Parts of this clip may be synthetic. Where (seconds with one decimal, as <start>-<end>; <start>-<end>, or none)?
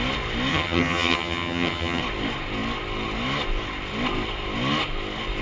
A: 0.5-2.0